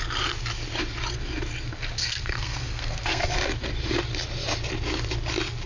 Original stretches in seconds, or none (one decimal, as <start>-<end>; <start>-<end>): 0.0-2.0; 3.3-5.7

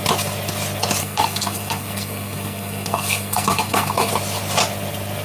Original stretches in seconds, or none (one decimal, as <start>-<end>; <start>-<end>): 0.0-1.0; 4.1-5.2

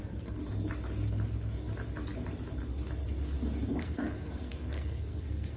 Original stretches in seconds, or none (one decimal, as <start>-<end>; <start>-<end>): 0.4-3.8